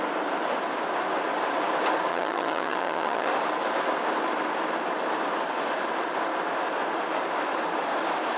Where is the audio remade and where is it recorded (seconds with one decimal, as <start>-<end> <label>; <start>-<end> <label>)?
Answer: 0.0-2.1 recorded; 2.1-3.3 remade; 3.3-8.4 recorded